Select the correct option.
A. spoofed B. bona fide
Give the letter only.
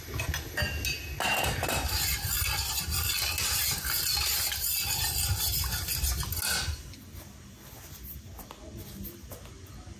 B